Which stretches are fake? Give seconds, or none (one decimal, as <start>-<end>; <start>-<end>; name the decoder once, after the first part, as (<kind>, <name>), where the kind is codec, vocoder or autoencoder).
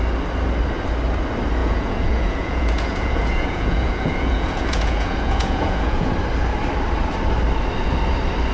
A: 1.6-6.1 (vocoder, Vocos)